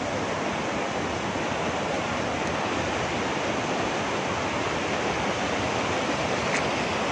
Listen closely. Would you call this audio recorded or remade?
recorded